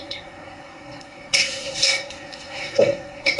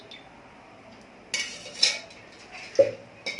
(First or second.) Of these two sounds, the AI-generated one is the first